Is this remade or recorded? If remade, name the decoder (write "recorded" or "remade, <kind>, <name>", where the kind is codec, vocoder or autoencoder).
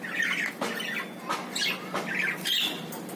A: recorded